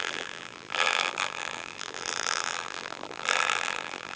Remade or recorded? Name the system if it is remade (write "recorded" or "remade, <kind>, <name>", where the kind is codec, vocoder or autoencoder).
remade, vocoder, BigVGAN v2